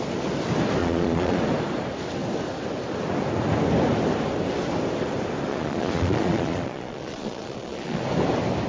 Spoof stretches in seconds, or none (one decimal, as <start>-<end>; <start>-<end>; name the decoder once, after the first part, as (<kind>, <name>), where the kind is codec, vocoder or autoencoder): 0.8-1.4 (vocoder, Vocos); 5.5-8.0